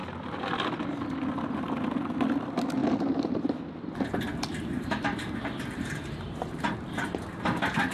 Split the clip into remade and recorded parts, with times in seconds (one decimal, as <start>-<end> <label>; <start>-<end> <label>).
0.0-4.5 recorded; 4.5-6.9 remade; 6.9-7.9 recorded